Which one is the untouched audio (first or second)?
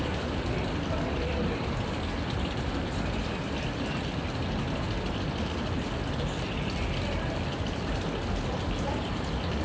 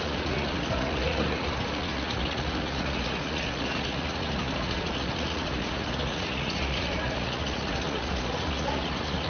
first